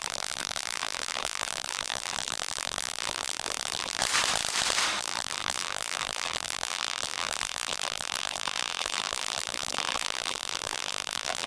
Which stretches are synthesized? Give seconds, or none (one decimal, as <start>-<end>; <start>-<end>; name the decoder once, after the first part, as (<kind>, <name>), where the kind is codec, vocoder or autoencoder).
0.0-4.0 (vocoder, BigVGAN v2); 5.0-11.5